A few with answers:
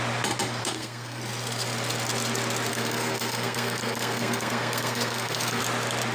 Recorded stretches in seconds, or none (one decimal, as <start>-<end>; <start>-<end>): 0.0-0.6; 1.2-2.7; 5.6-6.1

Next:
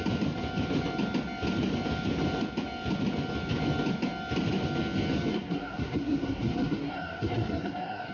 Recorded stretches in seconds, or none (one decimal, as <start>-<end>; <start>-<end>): 0.0-5.3

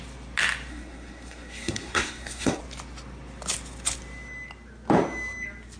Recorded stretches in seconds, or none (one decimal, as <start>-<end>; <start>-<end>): 0.0-0.7; 2.6-5.8

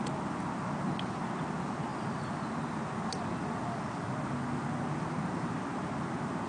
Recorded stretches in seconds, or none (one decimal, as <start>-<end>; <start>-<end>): 0.0-6.5

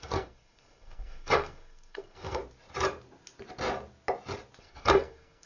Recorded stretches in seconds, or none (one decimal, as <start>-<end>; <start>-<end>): 2.4-4.6